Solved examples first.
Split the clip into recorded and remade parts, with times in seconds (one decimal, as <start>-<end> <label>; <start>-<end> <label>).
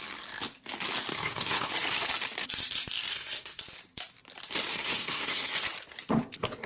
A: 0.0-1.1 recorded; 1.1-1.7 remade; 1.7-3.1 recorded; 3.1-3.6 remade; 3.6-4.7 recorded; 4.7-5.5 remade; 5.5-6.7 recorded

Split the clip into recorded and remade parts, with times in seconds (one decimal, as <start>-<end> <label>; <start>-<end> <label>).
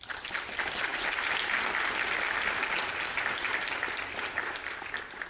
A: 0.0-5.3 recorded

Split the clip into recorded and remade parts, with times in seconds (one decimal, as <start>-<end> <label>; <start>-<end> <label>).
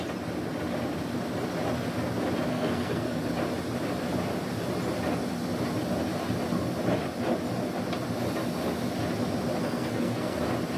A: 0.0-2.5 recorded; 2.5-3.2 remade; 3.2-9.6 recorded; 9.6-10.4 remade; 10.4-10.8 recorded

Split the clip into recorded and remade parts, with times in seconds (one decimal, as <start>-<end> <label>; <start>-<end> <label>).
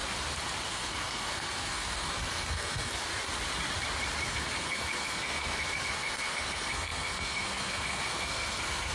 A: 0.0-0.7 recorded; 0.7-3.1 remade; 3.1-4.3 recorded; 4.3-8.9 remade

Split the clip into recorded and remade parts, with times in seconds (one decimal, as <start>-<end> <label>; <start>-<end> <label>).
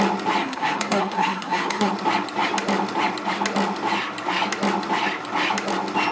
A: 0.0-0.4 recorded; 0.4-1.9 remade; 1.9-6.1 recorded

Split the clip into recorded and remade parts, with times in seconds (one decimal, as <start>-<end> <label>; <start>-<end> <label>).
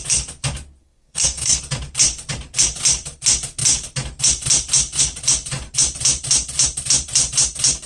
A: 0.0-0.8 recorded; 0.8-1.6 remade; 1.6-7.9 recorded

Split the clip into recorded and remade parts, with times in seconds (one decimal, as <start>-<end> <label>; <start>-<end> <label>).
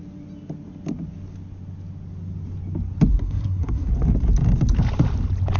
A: 0.0-3.1 recorded; 3.1-3.9 remade; 3.9-5.6 recorded